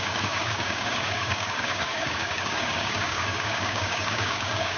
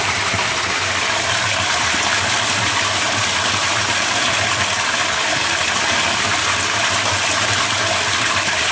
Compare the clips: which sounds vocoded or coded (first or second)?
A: first